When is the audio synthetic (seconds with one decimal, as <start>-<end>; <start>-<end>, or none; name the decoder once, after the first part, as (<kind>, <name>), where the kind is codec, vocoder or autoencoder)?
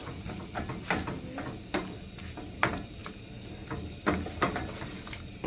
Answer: 0.0-0.6 (vocoder, Vocos)